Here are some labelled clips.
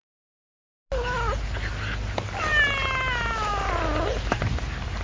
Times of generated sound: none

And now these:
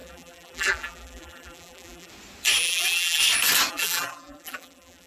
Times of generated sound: 0.0-2.1 (vocoder, BigVGAN v2); 2.6-3.2; 3.7-5.1

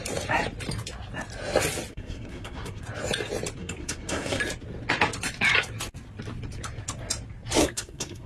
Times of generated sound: 1.9-2.8 (codec, SNAC); 3.6-4.4; 7.6-8.3

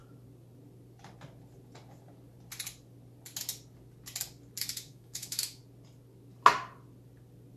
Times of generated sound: 4.6-5.6 (autoencoder, DAC-VAE)

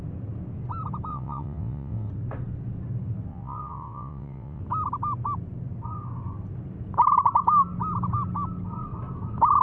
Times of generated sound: 1.1-2.1 (vocoder, WaveNeXt); 3.3-4.6